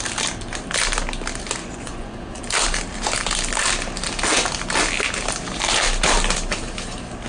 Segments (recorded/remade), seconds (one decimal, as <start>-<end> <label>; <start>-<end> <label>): 0.0-1.6 recorded; 1.6-2.4 remade; 2.4-7.3 recorded